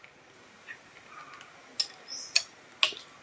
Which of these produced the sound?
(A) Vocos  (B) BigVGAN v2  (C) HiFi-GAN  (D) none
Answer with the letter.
D